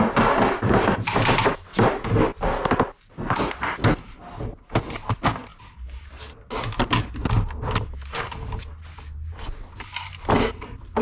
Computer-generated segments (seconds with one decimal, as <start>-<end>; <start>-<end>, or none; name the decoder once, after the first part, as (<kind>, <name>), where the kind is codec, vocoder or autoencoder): none